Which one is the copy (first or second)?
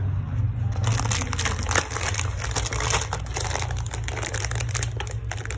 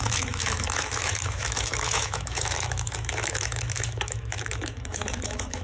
second